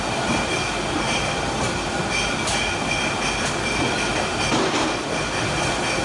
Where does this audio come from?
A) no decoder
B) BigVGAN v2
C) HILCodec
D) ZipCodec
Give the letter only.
A